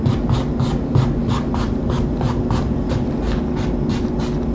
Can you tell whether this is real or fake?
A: real